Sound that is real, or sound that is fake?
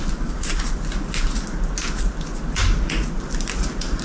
real